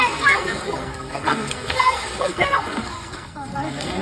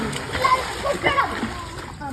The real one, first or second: second